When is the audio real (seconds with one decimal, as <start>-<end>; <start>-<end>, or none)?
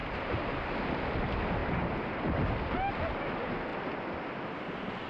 0.0-5.1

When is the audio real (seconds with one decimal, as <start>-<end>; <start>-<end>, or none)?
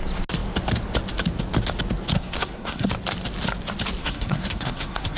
0.0-2.1; 2.9-4.0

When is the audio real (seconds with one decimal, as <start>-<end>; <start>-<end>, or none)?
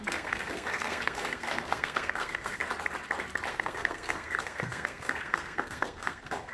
2.6-3.5